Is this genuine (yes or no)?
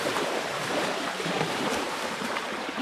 no